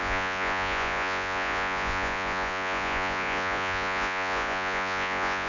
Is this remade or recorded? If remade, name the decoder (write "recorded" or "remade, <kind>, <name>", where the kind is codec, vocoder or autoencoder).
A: remade, vocoder, Vocos